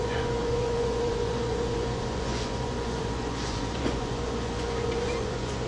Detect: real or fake fake